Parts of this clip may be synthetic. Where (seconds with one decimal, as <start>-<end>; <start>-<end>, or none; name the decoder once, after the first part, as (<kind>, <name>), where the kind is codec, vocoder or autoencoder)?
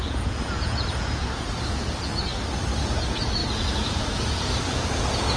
0.0-2.3 (vocoder, Vocos); 3.0-5.4